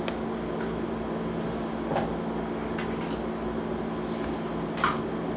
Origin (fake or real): real